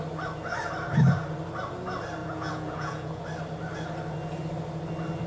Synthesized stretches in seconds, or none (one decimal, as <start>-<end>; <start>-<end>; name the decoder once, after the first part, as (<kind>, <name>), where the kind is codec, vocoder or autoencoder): 2.2-3.2 (vocoder, Vocos)